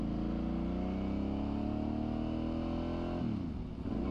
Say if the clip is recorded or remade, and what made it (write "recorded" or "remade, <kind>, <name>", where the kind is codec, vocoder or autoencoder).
recorded